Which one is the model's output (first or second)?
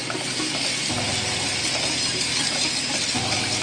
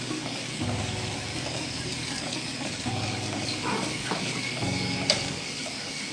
second